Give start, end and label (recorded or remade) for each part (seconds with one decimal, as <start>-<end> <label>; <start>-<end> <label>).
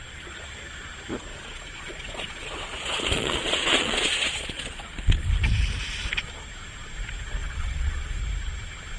0.0-1.3 recorded; 1.3-5.2 remade; 5.2-7.4 recorded; 7.4-8.2 remade; 8.2-9.0 recorded